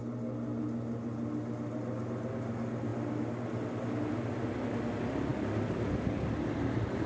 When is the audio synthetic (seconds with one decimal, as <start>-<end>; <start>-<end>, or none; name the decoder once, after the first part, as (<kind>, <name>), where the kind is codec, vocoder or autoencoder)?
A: none